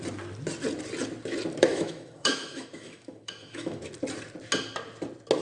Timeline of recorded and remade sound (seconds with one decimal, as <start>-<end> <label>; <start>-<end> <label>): 0.0-1.7 recorded; 1.7-3.9 remade; 3.9-5.4 recorded